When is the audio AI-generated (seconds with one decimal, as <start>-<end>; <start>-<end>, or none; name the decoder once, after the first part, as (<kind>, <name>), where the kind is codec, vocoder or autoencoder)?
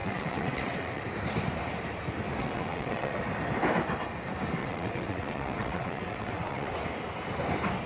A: 0.0-1.0 (vocoder, WaveNeXt); 2.4-3.2; 4.6-6.8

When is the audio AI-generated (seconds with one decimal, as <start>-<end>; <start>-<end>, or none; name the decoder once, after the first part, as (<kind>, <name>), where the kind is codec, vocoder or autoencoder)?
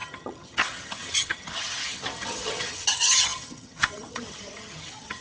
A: 0.0-5.2 (vocoder, HiFi-GAN)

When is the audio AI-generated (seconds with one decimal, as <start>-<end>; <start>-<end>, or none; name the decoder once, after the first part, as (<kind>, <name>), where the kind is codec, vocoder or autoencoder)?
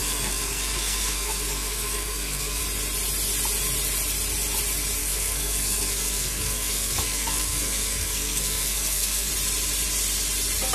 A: 0.0-2.6 (codec, SNAC); 5.0-9.3